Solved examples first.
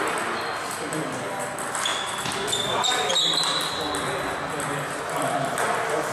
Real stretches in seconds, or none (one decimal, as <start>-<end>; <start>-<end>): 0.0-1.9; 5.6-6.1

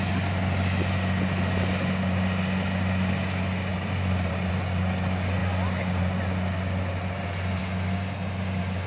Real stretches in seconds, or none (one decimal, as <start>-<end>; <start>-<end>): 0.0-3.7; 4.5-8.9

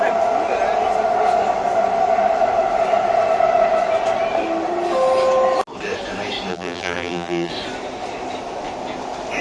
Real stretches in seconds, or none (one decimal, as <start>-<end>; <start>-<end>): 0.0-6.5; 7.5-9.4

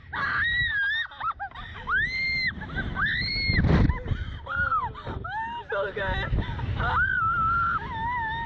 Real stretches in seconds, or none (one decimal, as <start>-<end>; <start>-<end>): 0.0-8.5